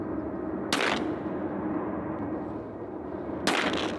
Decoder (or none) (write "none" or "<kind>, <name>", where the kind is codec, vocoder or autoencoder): none